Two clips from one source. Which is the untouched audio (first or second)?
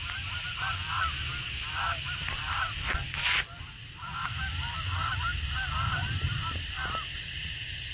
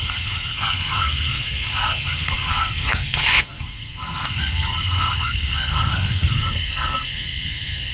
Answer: first